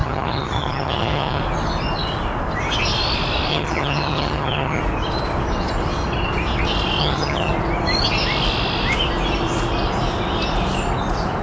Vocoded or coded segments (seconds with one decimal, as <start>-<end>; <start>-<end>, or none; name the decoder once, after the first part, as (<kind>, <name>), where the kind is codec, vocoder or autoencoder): 0.0-1.4 (vocoder, HiFi-GAN); 3.5-4.8; 7.0-7.5

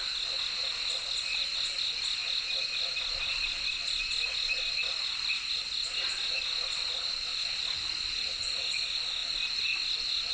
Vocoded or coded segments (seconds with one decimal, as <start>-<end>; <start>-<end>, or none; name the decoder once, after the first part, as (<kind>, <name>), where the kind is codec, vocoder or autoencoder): none

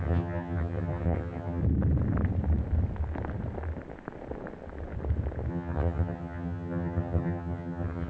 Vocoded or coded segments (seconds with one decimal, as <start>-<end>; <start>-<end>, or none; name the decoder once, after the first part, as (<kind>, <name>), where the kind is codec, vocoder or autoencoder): 0.0-1.6 (vocoder, HiFi-GAN); 5.5-8.1

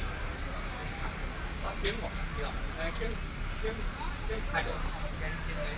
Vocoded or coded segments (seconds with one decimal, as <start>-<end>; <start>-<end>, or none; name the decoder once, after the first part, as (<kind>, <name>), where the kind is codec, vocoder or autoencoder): none